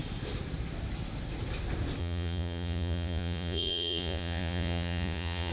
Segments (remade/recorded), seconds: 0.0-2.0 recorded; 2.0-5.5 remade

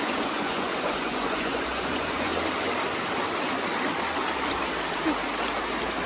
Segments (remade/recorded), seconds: 0.0-2.3 remade; 2.3-6.1 recorded

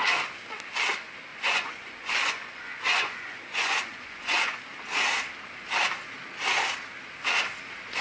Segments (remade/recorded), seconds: 0.0-1.3 recorded; 1.3-4.6 remade; 4.6-8.0 recorded

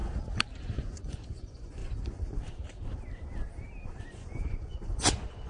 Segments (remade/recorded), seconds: 0.0-0.6 recorded; 0.6-1.8 remade; 1.8-4.0 recorded; 4.0-5.5 remade

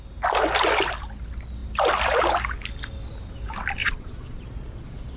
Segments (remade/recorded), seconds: 0.0-3.8 recorded; 3.8-5.2 remade

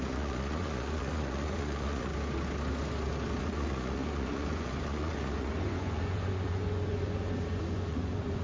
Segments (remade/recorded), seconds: 0.0-2.1 remade; 2.1-3.4 recorded; 3.4-8.4 remade

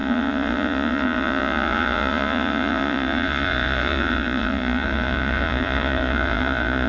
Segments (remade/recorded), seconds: 0.0-6.9 remade

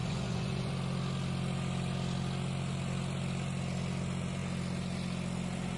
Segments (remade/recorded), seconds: 0.0-0.7 remade; 0.7-5.8 recorded